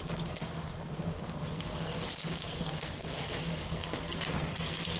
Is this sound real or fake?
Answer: fake